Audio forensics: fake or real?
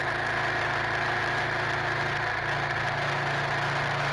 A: real